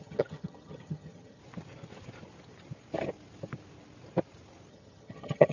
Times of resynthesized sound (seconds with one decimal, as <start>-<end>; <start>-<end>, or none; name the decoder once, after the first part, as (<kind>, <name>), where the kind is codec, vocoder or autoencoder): 0.0-1.4 (vocoder, HiFi-GAN); 4.7-5.5

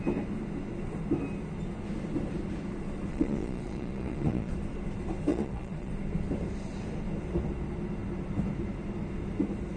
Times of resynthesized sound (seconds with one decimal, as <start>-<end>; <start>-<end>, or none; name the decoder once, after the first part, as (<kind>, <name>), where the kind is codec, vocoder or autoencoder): 3.1-4.5 (vocoder, Vocos); 5.3-5.9